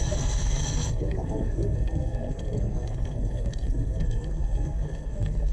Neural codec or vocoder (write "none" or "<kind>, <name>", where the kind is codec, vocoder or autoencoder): codec, SNAC